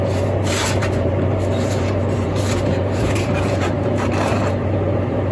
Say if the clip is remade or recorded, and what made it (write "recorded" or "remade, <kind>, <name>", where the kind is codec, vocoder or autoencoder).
remade, vocoder, BigVGAN v2